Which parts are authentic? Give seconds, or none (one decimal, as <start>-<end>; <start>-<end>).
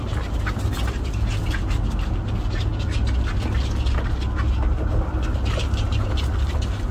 0.0-6.9